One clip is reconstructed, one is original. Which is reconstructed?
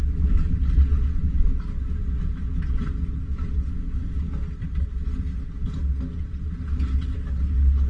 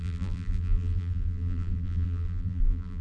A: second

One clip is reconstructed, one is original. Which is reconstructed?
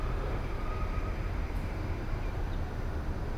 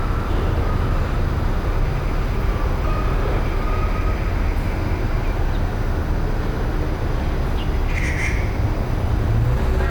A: first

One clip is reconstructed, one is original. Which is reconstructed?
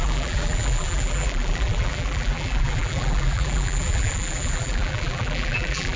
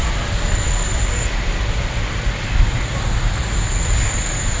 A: first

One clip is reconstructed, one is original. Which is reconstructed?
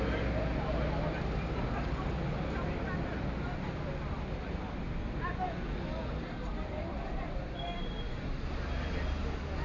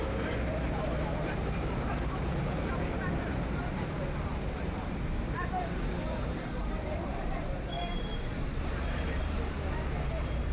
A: second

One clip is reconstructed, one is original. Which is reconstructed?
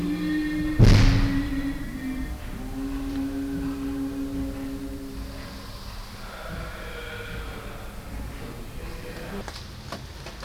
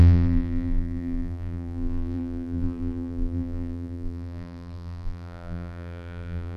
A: second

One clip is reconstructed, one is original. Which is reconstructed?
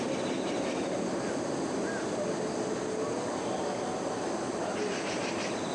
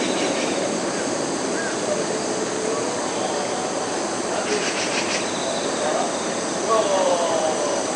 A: second